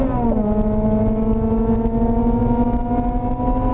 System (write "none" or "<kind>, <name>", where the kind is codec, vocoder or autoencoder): none